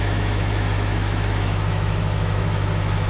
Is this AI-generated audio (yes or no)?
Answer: yes